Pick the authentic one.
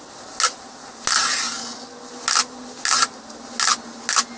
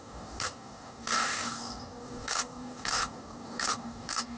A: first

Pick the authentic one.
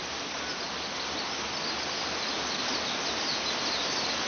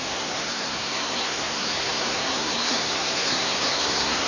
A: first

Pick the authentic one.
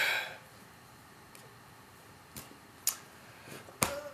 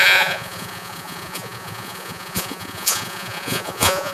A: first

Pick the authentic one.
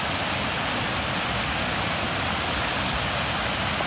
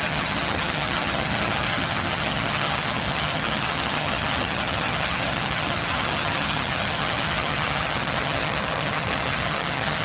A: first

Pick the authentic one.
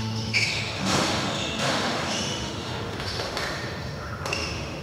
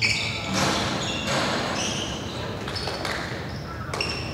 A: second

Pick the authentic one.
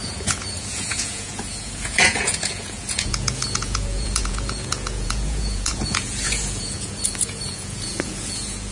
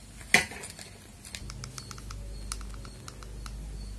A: second